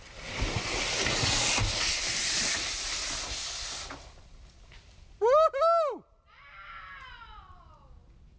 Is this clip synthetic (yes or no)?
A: no